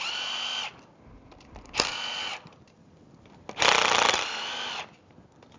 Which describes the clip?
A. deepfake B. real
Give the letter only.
B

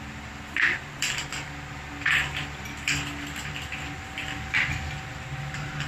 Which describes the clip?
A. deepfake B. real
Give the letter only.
A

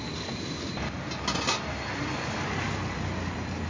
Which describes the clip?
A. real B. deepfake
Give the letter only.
A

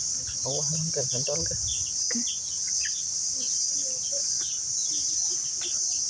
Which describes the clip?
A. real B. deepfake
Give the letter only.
A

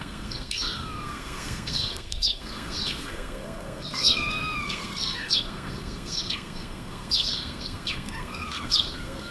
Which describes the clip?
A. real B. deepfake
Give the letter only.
B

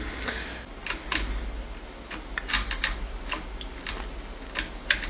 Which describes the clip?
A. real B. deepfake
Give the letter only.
A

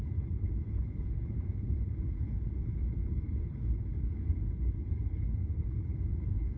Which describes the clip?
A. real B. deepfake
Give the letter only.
B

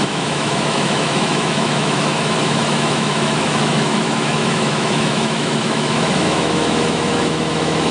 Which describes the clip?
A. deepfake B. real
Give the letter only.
A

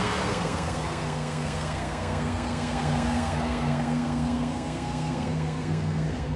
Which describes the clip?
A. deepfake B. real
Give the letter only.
A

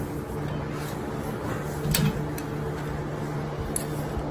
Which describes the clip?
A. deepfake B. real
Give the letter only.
B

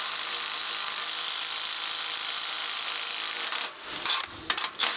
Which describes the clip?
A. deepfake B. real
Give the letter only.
B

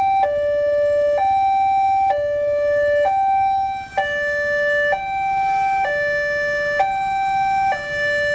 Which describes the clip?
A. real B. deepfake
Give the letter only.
A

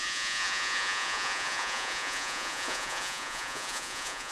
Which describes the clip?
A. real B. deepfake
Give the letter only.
B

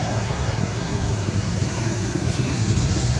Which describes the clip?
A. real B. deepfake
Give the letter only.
B